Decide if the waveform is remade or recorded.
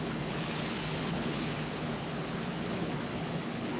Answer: remade